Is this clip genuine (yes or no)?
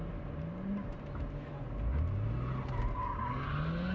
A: yes